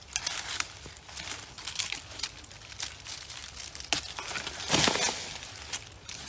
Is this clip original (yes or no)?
yes